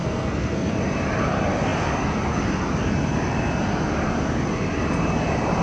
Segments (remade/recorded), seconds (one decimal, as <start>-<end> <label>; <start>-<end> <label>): 0.0-0.7 remade; 0.7-5.6 recorded